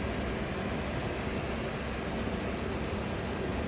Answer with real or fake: real